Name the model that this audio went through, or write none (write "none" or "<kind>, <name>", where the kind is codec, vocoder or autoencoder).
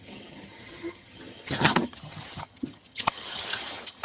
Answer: vocoder, HiFi-GAN